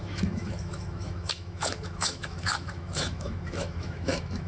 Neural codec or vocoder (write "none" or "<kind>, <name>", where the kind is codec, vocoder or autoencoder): autoencoder, DAC-VAE